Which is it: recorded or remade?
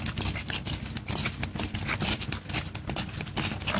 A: recorded